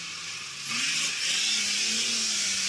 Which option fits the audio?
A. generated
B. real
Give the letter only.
B